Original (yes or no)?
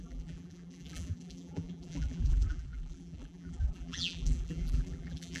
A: no